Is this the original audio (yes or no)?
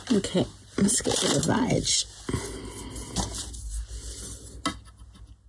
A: yes